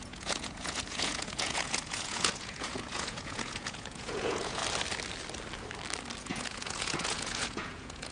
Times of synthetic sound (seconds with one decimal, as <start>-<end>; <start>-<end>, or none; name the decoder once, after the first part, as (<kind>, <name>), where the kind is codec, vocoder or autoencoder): 0.0-4.6 (vocoder, Vocos); 6.2-8.1